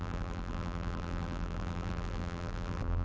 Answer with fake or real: fake